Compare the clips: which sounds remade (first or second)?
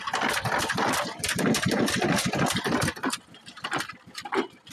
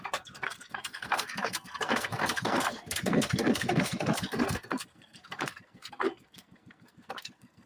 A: second